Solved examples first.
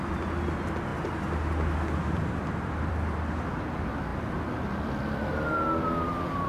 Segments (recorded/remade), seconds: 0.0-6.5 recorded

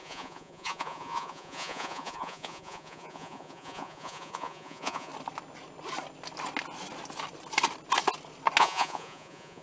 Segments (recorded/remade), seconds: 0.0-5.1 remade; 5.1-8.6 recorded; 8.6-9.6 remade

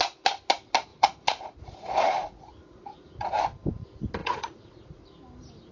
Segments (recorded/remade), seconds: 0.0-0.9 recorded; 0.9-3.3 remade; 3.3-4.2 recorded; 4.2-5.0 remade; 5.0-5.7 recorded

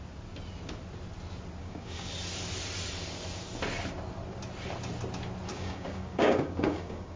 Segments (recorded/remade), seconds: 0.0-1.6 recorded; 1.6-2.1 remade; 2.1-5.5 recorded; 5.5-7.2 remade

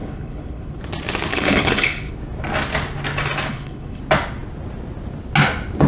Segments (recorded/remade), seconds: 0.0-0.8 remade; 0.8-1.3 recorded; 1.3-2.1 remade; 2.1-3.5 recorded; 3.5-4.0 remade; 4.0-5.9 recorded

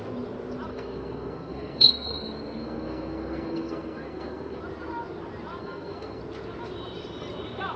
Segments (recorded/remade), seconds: 0.0-0.7 recorded; 0.7-4.6 remade; 4.6-5.6 recorded; 5.6-6.2 remade; 6.2-7.8 recorded

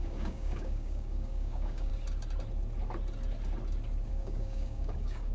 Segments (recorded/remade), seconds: 0.0-1.9 remade; 1.9-4.1 recorded; 4.1-5.3 remade

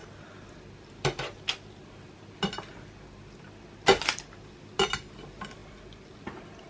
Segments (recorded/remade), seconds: 0.0-6.7 recorded